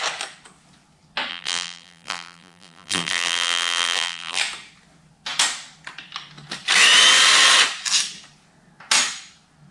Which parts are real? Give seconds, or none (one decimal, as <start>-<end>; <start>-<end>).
0.0-1.3; 4.4-9.7